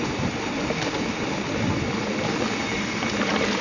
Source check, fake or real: real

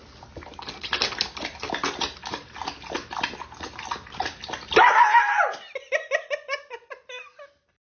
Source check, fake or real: real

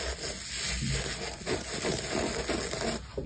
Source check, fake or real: real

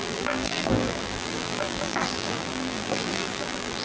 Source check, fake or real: fake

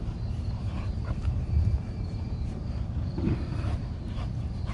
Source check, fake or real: fake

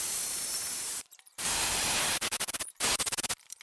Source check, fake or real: fake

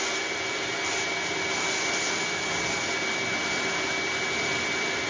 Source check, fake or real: real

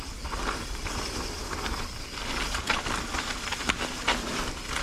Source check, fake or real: real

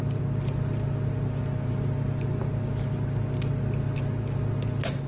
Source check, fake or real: real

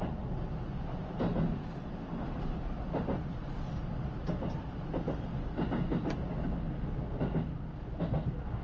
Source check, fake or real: real